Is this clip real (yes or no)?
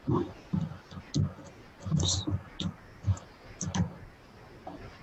yes